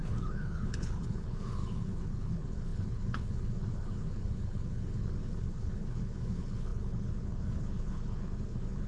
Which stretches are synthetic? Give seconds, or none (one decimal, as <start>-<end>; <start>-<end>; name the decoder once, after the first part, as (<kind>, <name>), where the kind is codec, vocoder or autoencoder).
0.0-8.9 (codec, HILCodec)